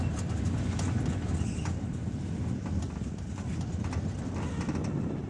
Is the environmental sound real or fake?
real